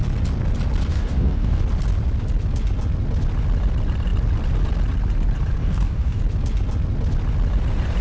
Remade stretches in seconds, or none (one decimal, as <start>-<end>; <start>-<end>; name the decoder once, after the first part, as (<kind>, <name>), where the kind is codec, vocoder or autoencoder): 0.9-1.6 (codec, DAC); 5.6-6.2